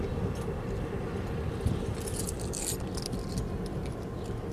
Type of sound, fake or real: real